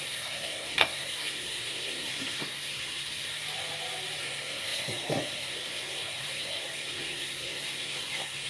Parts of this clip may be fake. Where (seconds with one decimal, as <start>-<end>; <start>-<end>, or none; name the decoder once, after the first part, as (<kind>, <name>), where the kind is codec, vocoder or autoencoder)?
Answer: 0.0-3.3 (codec, SNAC); 4.2-8.5